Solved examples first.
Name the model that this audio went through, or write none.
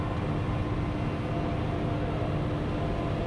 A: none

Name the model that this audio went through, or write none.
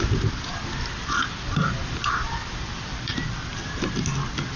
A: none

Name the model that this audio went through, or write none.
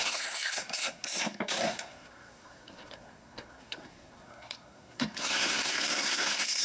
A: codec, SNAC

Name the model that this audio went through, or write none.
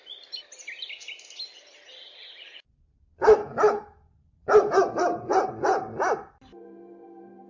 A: none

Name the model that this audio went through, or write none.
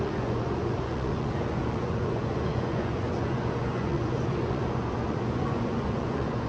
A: vocoder, Vocos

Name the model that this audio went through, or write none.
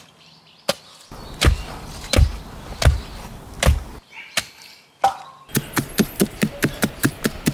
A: none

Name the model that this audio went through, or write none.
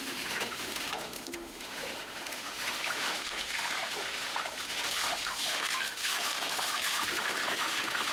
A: autoencoder, DAC-VAE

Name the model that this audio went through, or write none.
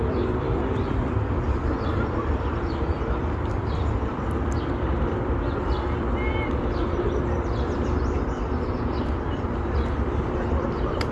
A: vocoder, BigVGAN v2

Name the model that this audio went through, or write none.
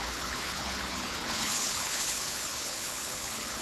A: codec, HILCodec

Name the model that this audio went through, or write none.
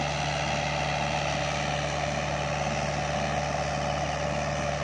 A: none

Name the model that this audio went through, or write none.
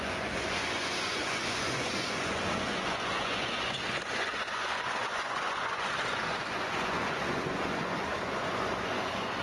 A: vocoder, Vocos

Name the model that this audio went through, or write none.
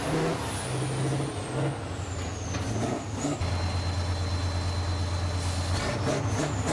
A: none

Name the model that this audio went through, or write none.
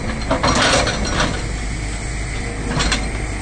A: none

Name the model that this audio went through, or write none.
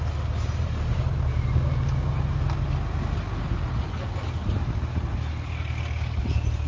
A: none